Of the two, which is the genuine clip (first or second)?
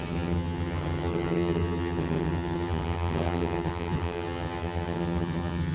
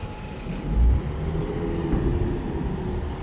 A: second